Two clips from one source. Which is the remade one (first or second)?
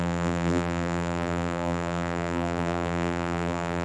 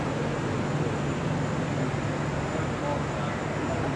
first